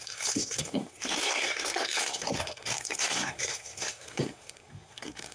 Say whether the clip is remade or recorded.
remade